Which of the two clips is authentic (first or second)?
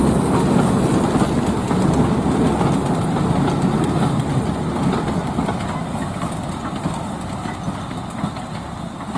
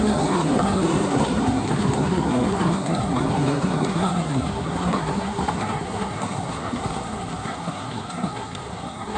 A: first